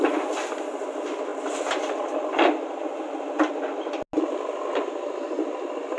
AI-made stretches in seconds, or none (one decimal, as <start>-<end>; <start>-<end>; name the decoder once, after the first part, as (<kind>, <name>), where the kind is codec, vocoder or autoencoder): none

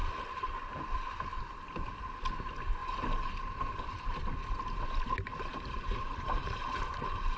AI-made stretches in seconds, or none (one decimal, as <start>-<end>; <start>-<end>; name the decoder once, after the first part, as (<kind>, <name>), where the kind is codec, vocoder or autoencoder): 2.8-4.2 (vocoder, BigVGAN v2); 5.5-7.4

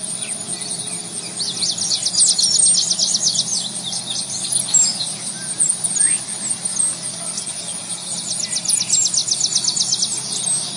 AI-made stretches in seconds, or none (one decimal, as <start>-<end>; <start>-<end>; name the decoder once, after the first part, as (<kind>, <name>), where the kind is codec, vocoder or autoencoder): 4.9-6.2 (vocoder, BigVGAN v2)

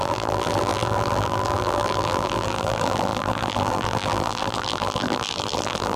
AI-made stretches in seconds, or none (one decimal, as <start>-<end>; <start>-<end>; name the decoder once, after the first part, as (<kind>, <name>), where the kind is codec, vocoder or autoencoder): 0.0-6.0 (vocoder, BigVGAN v2)

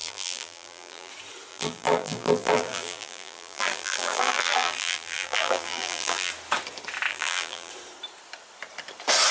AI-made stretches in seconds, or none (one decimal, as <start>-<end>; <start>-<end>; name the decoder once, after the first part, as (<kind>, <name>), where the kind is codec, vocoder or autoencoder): 0.0-1.1 (vocoder, BigVGAN v2); 1.5-6.3; 7.1-7.7

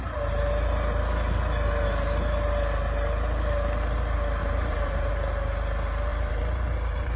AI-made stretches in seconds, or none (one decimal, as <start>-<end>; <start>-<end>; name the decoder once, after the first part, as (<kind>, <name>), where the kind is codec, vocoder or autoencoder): 4.4-5.1 (vocoder, BigVGAN v2); 6.1-7.2

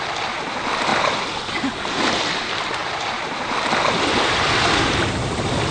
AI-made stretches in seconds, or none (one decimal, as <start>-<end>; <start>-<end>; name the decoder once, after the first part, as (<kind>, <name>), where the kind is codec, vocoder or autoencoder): 2.8-3.7 (vocoder, BigVGAN v2)